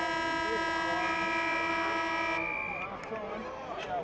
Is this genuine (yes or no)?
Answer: yes